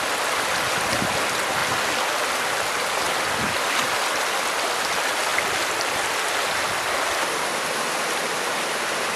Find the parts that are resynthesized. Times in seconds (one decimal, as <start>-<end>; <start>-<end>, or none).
none